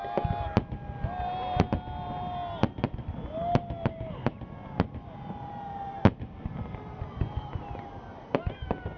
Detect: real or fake real